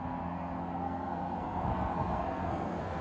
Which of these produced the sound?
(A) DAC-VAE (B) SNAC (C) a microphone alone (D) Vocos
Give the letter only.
B